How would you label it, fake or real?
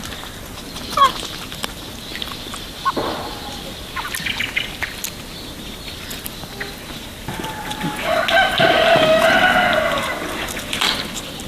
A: real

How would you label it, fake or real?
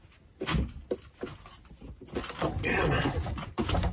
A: real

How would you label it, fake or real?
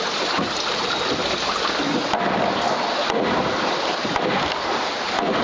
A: real